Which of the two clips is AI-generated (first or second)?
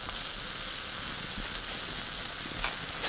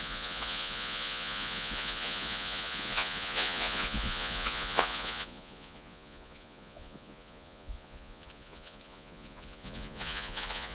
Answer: second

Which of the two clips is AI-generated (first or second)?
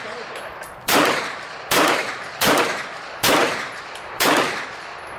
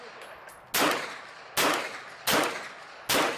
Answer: first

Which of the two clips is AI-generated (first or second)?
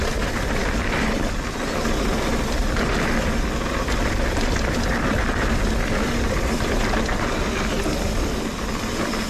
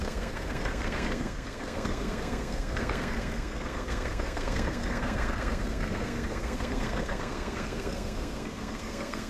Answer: second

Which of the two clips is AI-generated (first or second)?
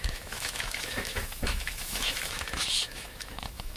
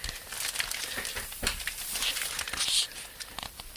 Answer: first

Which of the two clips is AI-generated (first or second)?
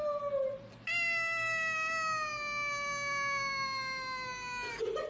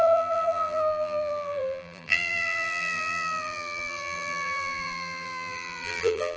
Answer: second